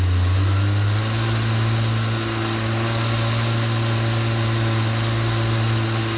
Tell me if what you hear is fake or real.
real